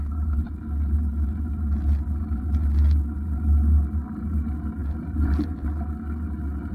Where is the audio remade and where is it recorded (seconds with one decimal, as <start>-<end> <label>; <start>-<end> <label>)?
0.0-6.7 recorded